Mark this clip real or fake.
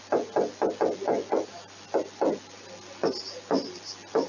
real